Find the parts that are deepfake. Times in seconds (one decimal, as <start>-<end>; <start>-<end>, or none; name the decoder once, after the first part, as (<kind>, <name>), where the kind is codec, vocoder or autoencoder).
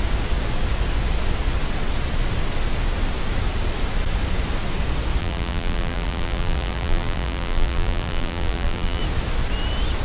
5.2-9.0 (vocoder, BigVGAN v2)